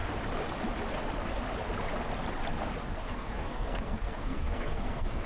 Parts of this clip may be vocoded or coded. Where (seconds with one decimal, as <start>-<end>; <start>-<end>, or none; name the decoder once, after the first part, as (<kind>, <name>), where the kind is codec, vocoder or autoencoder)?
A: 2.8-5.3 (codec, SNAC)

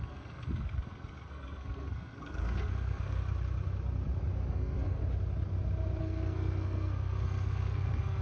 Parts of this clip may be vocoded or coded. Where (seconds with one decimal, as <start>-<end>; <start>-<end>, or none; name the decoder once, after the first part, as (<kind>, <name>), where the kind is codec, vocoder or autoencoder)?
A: 0.0-3.2 (codec, SNAC); 4.5-5.0; 6.0-8.2

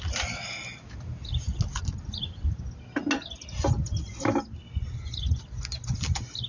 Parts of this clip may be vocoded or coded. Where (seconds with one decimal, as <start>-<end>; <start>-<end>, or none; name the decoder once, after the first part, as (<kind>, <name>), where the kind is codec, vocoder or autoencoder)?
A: none